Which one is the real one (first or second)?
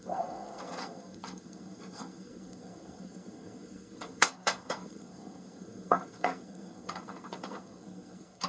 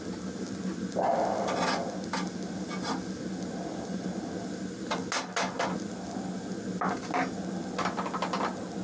second